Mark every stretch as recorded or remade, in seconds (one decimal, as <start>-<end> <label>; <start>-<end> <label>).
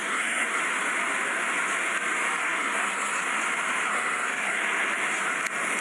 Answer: 0.0-0.6 remade; 0.6-2.4 recorded; 2.4-3.2 remade; 3.2-3.9 recorded; 3.9-4.9 remade; 4.9-5.8 recorded